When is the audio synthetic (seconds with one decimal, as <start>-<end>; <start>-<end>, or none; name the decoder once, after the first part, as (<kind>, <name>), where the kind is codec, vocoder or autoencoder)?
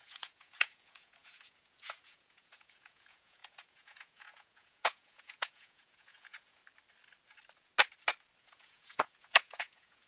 0.0-6.6 (vocoder, Vocos); 8.4-10.1